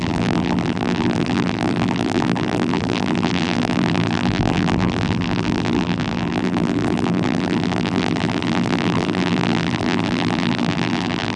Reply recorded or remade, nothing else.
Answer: remade